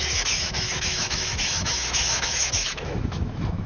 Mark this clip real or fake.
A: fake